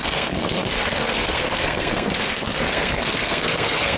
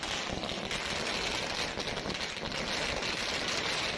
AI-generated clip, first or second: first